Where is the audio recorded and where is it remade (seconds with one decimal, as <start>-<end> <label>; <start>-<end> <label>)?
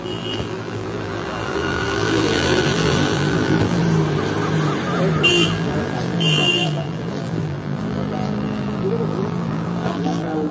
0.0-3.8 remade; 3.8-5.3 recorded; 5.3-10.5 remade